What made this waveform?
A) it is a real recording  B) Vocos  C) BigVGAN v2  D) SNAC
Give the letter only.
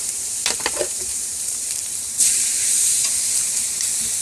C